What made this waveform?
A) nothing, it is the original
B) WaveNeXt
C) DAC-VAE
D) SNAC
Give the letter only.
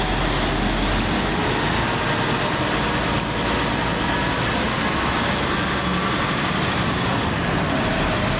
A